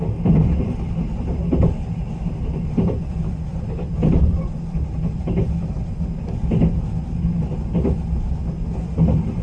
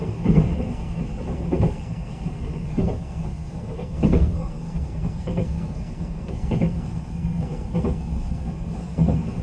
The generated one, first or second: second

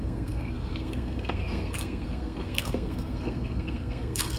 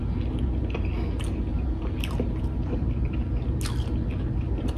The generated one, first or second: first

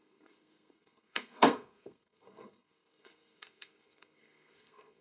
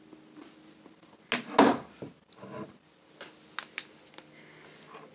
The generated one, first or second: first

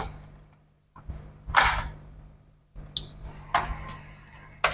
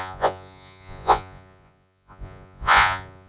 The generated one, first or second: second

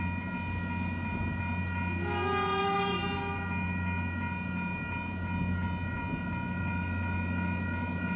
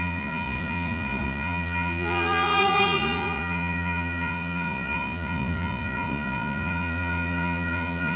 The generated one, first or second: second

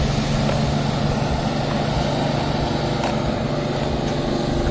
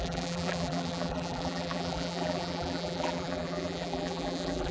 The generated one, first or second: second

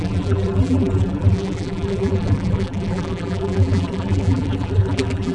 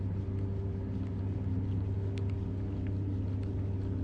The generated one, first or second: first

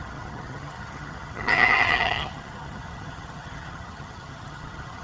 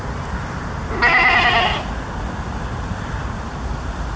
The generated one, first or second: first